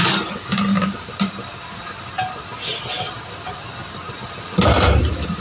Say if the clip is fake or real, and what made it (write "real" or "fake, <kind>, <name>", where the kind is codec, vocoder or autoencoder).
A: real